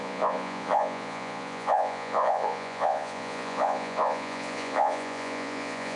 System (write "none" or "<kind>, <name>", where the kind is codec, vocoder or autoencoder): vocoder, Vocos